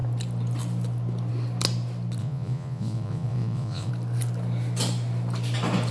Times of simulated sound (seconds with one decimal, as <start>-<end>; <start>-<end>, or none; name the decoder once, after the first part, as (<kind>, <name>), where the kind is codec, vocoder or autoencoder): 2.2-3.9 (vocoder, Vocos)

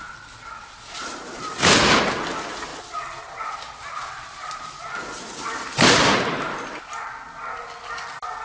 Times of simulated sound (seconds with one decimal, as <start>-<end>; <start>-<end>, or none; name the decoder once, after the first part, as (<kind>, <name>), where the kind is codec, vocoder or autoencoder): 1.5-2.0 (vocoder, Vocos)